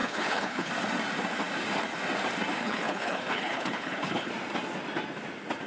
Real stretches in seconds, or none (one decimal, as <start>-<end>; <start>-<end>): 0.7-2.6; 4.3-5.7